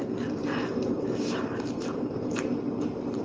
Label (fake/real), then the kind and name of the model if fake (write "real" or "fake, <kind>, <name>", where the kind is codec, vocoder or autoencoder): fake, vocoder, BigVGAN v2